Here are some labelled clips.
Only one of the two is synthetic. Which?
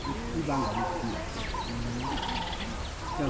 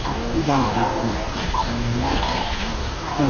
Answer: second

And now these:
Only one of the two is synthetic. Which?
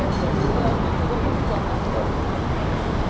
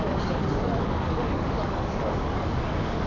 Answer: second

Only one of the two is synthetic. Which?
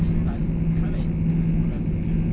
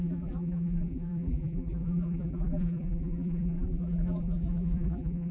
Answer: second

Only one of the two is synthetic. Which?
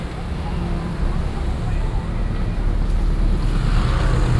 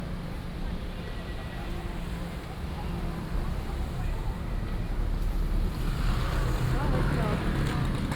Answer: second